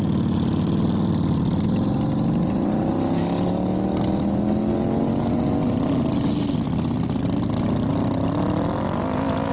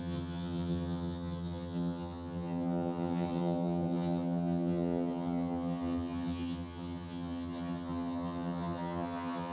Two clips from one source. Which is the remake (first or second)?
second